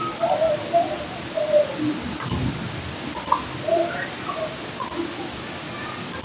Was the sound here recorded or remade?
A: recorded